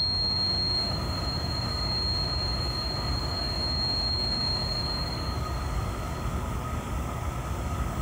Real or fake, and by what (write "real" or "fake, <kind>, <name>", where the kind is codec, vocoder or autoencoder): fake, codec, DAC